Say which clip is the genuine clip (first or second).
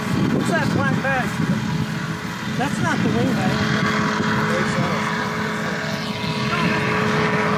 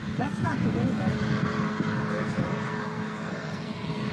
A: first